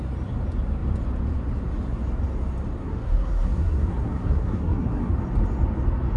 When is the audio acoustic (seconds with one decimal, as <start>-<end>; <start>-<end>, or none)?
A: 0.0-2.8; 5.1-6.2